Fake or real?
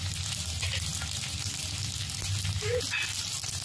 real